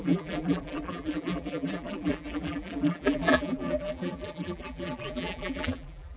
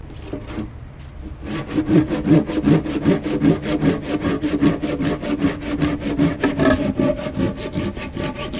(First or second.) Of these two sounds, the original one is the second